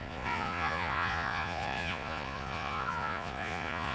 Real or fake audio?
fake